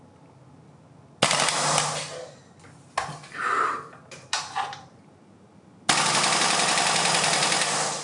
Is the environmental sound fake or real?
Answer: real